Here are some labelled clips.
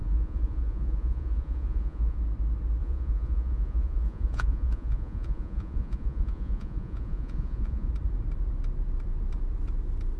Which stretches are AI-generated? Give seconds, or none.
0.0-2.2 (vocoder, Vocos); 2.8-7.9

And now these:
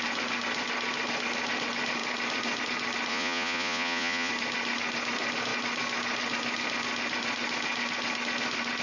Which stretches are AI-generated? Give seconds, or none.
3.1-4.3 (vocoder, Vocos)

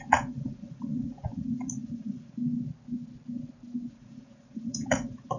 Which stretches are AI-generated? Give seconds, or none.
0.0-2.4 (vocoder, Vocos); 3.9-5.4